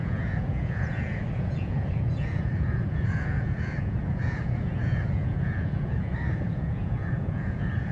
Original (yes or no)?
no